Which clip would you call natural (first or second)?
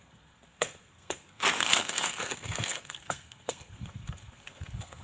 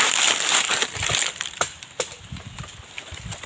second